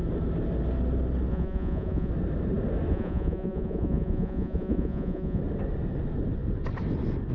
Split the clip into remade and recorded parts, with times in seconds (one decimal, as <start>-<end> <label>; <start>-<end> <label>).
0.0-1.3 recorded; 1.3-2.1 remade; 2.1-2.9 recorded; 2.9-5.4 remade; 5.4-7.3 recorded